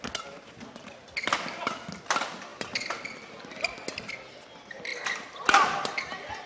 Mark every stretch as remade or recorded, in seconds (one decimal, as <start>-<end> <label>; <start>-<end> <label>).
0.0-6.5 recorded